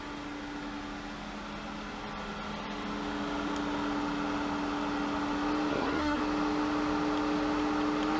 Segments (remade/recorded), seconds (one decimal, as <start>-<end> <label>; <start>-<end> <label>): 0.0-5.7 recorded; 5.7-6.2 remade; 6.2-8.2 recorded